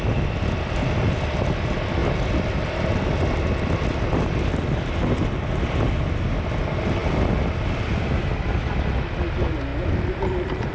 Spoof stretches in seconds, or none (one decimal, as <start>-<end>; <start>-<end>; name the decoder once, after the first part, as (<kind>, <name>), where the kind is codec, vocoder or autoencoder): none